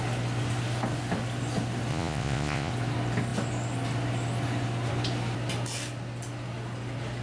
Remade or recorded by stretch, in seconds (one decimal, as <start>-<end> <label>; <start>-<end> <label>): 0.0-1.9 recorded; 1.9-2.7 remade; 2.7-7.2 recorded